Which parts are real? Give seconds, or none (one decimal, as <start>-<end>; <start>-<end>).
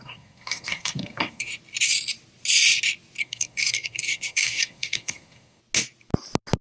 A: 1.5-3.2; 5.6-6.6